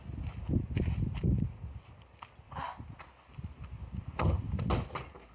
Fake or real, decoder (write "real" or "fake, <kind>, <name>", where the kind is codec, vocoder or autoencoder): real